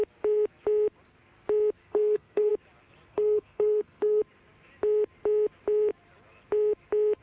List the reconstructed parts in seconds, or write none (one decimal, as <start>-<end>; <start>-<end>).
1.8-2.5; 3.1-4.2